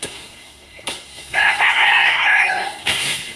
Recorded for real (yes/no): no